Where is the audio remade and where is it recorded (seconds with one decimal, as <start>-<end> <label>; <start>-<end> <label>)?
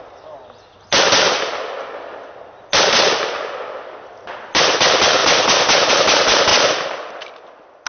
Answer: 0.0-7.9 recorded